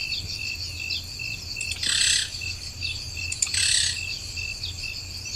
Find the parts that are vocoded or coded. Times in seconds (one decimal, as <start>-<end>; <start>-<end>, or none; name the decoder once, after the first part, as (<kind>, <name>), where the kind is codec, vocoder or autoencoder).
none